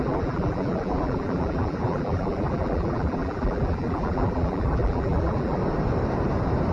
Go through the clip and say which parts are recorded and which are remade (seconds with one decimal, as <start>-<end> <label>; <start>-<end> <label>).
0.0-5.6 remade; 5.6-6.7 recorded